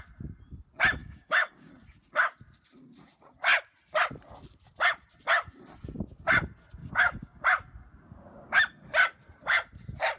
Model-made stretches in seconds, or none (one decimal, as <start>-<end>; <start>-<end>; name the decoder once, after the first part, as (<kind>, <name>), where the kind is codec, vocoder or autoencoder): 1.0-1.7 (codec, DAC); 6.8-7.4